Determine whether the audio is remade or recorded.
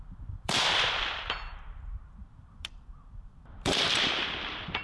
remade